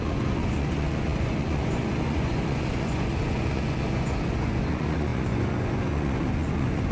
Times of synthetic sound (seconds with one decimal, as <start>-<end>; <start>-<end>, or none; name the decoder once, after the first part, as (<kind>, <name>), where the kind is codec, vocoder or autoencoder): 0.0-6.9 (vocoder, Vocos)